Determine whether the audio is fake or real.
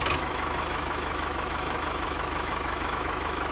fake